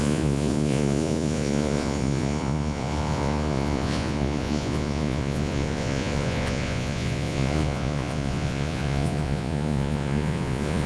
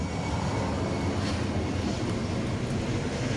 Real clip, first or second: second